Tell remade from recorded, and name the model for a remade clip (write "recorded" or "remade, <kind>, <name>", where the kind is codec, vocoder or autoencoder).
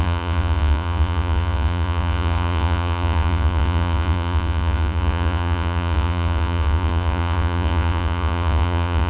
remade, vocoder, Vocos